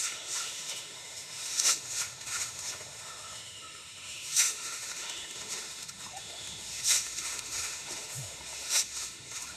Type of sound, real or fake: fake